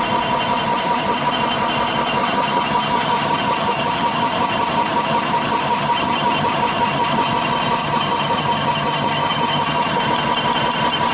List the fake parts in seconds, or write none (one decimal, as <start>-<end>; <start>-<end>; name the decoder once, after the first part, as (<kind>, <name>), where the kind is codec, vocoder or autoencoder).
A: 0.7-1.3 (vocoder, HiFi-GAN); 2.2-7.3; 7.8-10.0